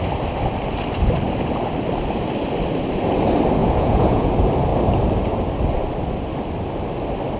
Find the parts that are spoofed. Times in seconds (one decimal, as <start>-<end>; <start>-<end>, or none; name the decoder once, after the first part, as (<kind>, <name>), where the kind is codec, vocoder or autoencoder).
3.6-4.3 (vocoder, Vocos)